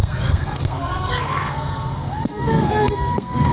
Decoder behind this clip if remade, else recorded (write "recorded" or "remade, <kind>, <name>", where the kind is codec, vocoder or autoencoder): remade, codec, SNAC